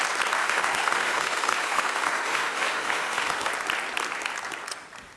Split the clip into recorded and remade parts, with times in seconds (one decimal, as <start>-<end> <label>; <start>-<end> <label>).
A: 0.0-0.4 recorded; 0.4-3.5 remade; 3.5-5.2 recorded